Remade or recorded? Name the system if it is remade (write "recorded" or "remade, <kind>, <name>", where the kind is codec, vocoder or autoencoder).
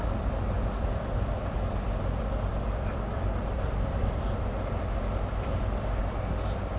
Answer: remade, vocoder, BigVGAN v2